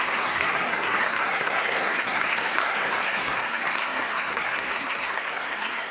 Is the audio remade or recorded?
remade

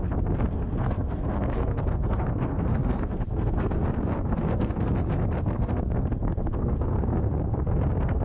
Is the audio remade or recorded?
remade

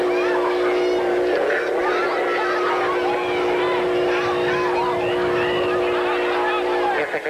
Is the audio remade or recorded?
recorded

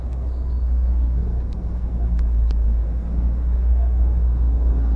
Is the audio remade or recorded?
remade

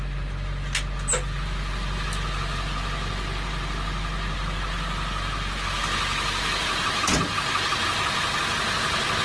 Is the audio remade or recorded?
recorded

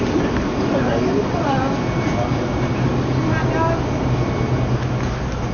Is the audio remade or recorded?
recorded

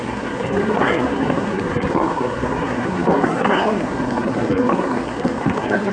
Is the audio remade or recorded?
remade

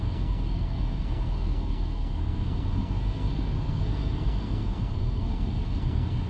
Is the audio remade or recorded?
remade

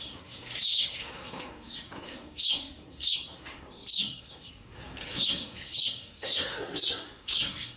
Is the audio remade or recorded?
remade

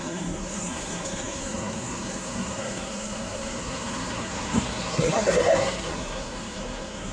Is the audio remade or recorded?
remade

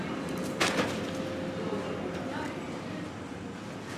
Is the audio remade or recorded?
recorded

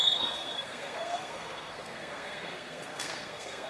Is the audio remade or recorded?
remade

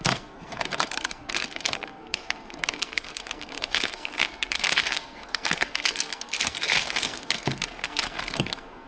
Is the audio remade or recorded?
remade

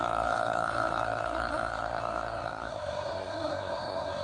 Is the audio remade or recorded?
remade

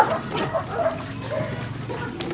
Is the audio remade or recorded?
recorded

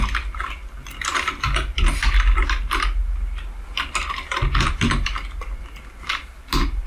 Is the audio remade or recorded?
recorded